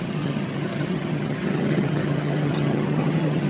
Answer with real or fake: fake